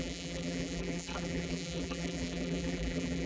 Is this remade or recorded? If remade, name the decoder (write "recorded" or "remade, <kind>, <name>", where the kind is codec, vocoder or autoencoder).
remade, vocoder, BigVGAN v2